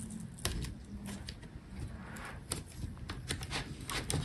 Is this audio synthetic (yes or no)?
no